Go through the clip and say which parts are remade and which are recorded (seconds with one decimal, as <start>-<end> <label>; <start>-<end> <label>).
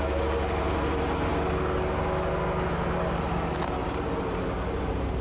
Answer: 0.0-3.8 recorded; 3.8-5.2 remade